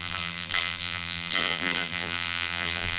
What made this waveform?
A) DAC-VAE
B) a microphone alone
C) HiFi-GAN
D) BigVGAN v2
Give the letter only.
D